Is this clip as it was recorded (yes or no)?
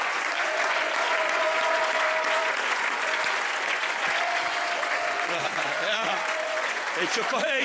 no